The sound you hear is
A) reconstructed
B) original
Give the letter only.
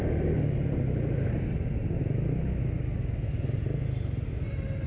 B